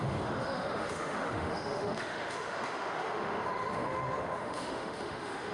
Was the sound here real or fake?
fake